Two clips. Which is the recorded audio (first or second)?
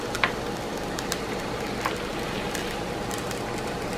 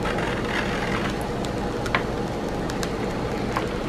second